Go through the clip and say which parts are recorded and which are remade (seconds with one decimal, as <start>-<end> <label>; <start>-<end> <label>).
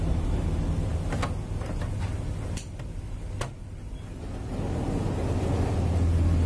0.0-6.5 recorded